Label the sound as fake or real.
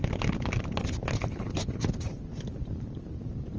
real